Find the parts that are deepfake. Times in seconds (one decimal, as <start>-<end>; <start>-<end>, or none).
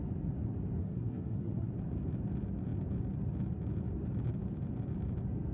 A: 0.8-1.7